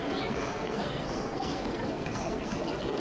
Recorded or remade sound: remade